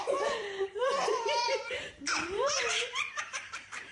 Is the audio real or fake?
fake